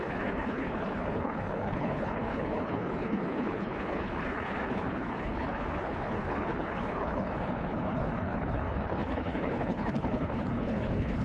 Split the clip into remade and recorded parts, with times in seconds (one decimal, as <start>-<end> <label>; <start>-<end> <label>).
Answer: 0.0-11.2 remade